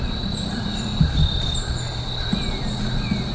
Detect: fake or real real